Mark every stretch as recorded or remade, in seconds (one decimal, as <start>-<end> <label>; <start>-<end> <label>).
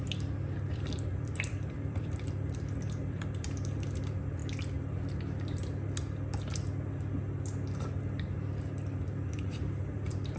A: 0.0-4.4 remade; 4.4-9.3 recorded; 9.3-10.4 remade